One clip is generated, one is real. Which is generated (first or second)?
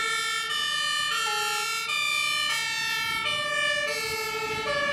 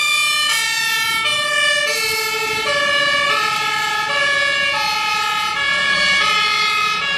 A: second